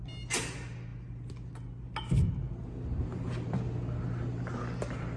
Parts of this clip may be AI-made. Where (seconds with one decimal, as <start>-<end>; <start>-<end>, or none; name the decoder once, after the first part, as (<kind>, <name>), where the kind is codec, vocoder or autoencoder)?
none